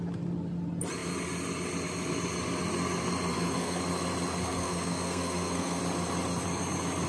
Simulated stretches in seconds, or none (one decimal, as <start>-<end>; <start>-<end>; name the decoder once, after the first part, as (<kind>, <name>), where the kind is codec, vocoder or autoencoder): 3.3-3.8 (codec, SNAC); 4.4-5.8